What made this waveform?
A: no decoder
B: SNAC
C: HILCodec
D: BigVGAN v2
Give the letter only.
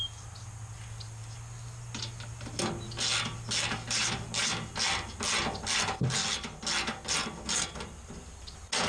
A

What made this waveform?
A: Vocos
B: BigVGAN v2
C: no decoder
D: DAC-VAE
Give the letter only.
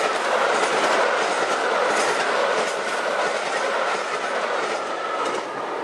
C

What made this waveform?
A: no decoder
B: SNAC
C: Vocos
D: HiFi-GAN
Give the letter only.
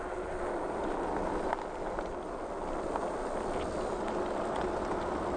A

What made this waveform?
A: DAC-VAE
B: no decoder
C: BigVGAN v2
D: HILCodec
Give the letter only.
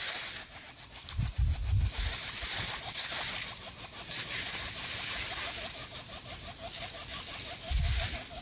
B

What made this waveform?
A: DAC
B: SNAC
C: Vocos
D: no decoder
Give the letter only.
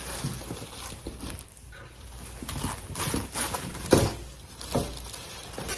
D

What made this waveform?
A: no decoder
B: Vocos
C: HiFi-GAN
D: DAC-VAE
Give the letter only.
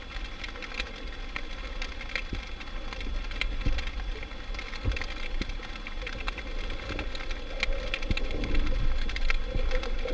A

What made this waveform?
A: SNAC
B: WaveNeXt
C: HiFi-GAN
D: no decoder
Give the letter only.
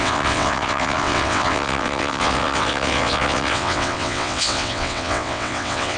B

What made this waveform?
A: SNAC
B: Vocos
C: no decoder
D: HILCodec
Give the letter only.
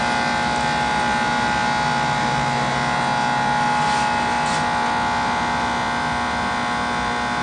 C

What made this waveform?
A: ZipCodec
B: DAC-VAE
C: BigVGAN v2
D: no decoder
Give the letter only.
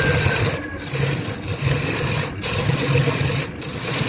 D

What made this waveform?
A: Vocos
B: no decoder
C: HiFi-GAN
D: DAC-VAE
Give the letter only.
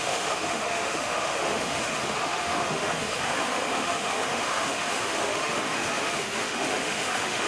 D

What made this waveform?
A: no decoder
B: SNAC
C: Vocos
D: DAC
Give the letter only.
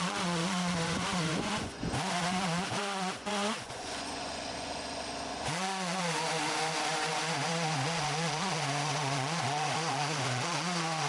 C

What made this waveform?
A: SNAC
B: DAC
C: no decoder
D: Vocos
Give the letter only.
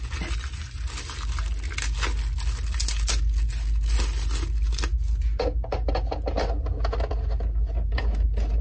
C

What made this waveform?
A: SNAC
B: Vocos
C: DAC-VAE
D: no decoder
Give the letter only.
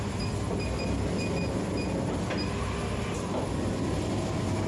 D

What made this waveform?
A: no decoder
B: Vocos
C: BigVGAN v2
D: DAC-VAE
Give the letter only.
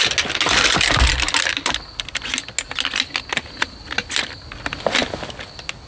A